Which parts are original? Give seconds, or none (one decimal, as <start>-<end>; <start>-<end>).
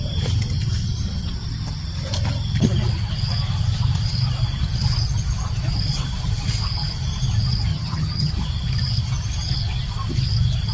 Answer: 0.0-7.7; 8.3-10.7